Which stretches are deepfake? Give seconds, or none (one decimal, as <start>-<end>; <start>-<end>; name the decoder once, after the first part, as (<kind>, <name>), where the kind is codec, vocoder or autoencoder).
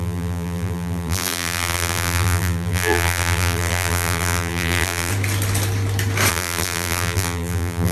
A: 0.0-5.1 (vocoder, BigVGAN v2); 6.3-7.9